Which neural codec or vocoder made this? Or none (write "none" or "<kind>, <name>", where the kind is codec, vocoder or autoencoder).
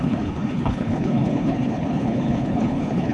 codec, HILCodec